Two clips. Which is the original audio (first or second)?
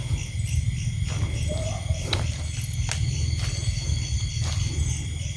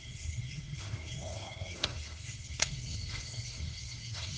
first